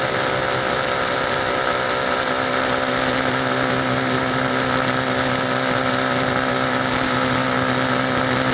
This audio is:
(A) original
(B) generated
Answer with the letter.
A